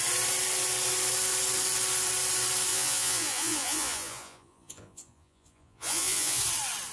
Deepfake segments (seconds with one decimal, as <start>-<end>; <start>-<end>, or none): 2.7-6.4